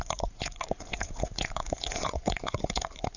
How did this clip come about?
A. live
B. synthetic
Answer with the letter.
B